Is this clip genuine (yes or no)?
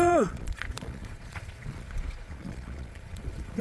no